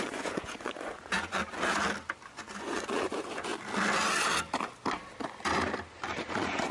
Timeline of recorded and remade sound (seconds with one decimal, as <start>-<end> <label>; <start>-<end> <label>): 0.0-1.4 remade; 1.4-2.3 recorded; 2.3-3.5 remade; 3.5-6.3 recorded; 6.3-6.7 remade

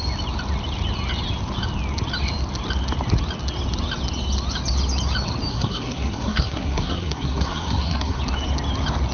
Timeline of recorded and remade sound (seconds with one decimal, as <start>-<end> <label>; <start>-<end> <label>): 0.0-5.5 recorded; 5.5-8.2 remade; 8.2-9.1 recorded

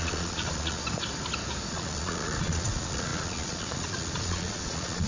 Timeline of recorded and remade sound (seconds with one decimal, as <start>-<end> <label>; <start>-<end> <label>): 0.0-0.8 remade; 0.8-1.7 recorded; 1.7-5.1 remade

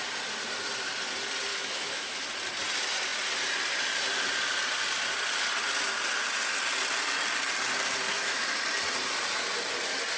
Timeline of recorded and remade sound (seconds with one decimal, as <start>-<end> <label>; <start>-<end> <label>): 0.0-1.5 recorded; 1.5-2.3 remade; 2.3-8.1 recorded; 8.1-8.6 remade; 8.6-10.2 recorded

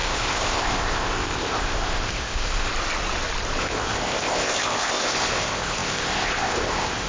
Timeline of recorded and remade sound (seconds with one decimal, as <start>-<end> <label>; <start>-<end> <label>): 0.0-2.7 remade; 2.7-3.6 recorded; 3.6-7.1 remade

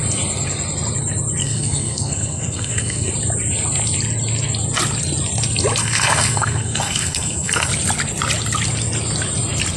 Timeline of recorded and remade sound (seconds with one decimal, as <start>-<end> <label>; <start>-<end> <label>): 0.0-1.4 recorded; 1.4-3.1 remade; 3.1-5.8 recorded; 5.8-7.7 remade; 7.7-9.8 recorded

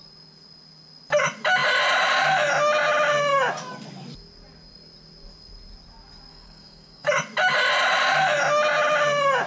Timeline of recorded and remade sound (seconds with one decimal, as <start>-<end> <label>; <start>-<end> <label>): 0.0-6.3 recorded; 6.3-7.1 remade; 7.1-9.5 recorded